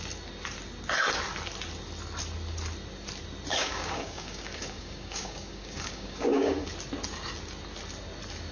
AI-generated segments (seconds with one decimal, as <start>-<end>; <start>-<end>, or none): 3.5-6.7

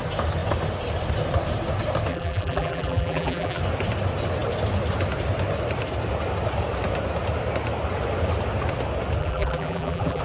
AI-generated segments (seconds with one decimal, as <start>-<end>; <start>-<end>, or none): 2.1-3.6; 9.2-10.2

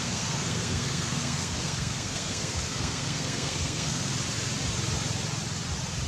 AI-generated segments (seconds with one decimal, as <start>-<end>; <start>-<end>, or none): 0.0-4.1

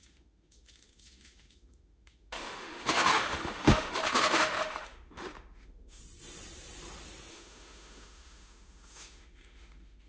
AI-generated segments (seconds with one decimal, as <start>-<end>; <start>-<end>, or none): 0.0-6.0; 7.3-10.1